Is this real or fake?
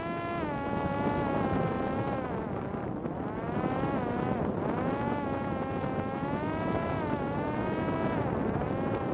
real